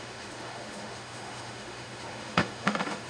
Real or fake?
fake